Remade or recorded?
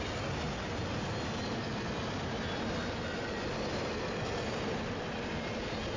recorded